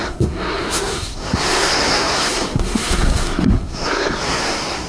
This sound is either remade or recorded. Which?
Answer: remade